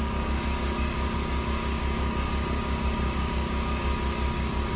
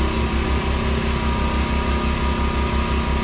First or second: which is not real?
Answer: first